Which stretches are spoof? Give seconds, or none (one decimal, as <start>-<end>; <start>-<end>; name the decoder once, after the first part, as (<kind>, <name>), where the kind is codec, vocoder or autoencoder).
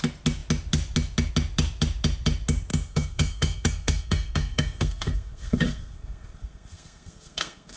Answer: 2.7-7.8 (codec, SNAC)